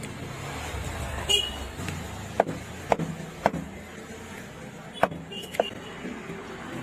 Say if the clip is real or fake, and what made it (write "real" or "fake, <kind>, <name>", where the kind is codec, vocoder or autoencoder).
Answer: real